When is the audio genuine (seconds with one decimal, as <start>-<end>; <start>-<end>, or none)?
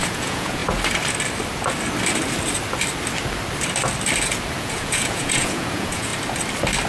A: 0.6-4.6; 6.1-6.9